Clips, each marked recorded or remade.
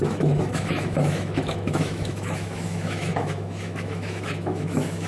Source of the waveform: remade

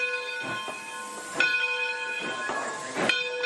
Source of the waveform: recorded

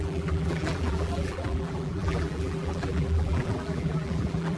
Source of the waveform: remade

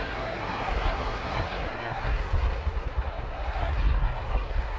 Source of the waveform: remade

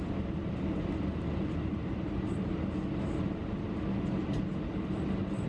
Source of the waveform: recorded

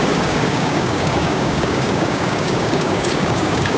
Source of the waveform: remade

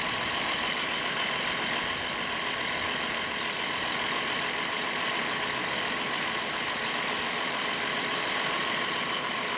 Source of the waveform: recorded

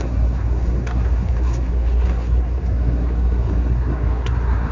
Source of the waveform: remade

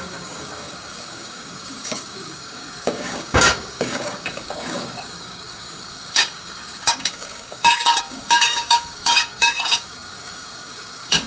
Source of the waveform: remade